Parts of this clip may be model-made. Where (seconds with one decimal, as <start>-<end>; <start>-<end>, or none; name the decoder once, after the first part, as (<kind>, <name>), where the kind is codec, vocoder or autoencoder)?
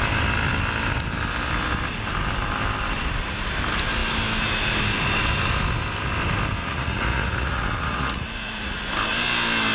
6.6-8.9 (vocoder, Vocos)